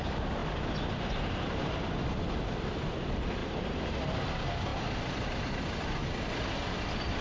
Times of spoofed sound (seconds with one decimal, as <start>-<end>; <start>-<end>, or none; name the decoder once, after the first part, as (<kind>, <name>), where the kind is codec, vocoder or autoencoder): none